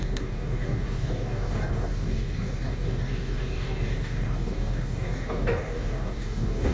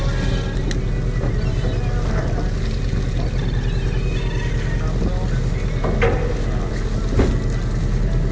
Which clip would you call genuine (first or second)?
second